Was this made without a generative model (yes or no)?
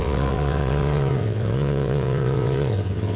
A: no